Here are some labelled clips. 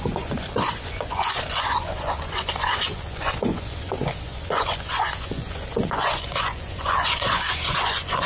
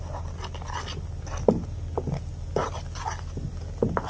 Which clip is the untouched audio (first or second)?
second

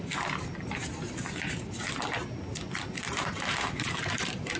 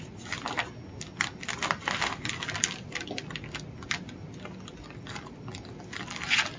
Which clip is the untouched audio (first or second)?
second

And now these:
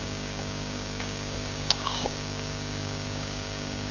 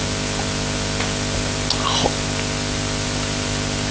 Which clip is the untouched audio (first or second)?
second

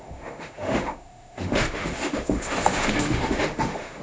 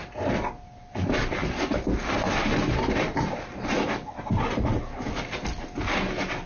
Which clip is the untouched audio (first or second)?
second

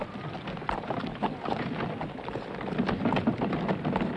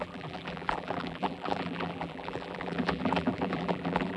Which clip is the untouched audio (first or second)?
first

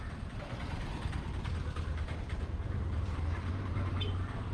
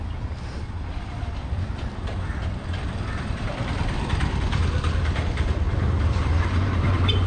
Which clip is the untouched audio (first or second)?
first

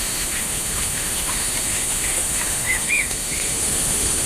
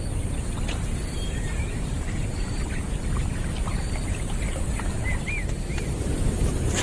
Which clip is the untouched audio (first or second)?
second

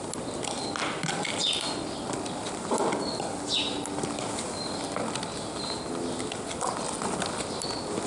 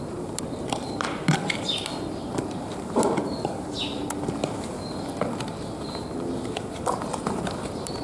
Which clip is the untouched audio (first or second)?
first